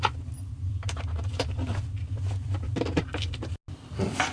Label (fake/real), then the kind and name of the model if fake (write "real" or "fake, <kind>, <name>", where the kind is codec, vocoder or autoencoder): real